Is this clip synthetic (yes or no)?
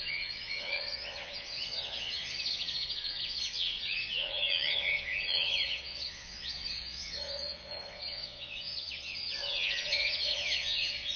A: yes